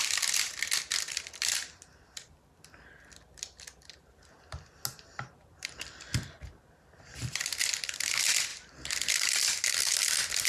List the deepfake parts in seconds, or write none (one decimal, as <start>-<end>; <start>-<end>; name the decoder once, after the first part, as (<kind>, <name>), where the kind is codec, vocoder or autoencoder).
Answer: none